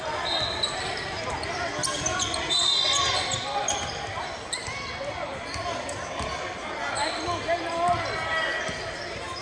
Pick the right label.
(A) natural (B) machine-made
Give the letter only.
A